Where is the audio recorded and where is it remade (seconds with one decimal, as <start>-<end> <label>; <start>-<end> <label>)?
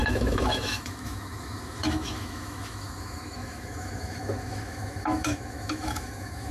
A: 0.0-6.5 remade